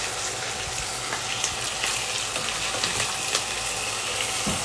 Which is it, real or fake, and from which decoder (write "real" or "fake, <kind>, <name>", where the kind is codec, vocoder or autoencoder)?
real